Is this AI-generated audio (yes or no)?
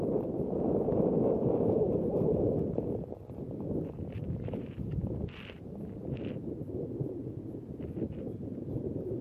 no